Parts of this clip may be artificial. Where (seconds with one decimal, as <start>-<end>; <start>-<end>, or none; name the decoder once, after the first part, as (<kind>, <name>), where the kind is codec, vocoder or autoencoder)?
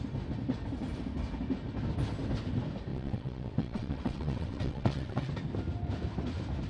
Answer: 2.9-5.3 (vocoder, WaveNeXt)